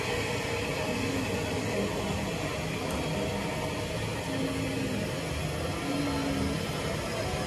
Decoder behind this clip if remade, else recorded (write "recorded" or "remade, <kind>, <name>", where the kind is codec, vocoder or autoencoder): recorded